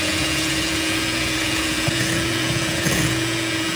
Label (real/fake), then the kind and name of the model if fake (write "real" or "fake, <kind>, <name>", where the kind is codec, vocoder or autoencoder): fake, vocoder, Vocos